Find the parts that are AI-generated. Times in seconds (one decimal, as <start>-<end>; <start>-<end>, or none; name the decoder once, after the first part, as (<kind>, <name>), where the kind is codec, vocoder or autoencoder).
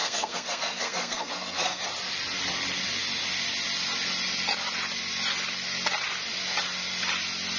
0.0-1.8 (codec, SNAC)